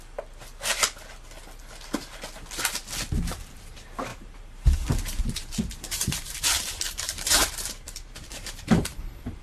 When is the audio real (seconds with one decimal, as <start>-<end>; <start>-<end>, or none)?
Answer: 0.0-4.1